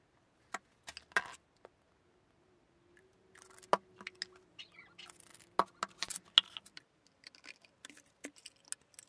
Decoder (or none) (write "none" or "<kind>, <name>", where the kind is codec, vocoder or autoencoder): none